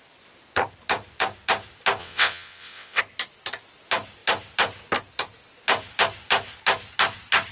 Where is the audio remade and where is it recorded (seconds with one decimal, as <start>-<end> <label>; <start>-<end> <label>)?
0.0-2.0 recorded; 2.0-3.0 remade; 3.0-7.5 recorded